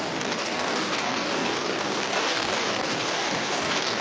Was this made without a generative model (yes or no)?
no